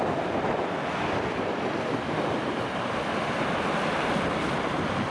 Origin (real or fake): real